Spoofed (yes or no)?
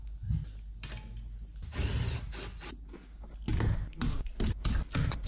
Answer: no